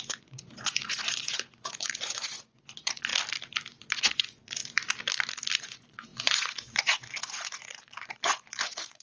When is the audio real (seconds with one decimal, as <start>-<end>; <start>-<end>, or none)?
3.1-3.9; 4.6-5.6